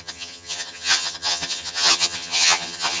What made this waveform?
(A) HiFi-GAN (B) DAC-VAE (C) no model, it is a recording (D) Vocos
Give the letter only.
A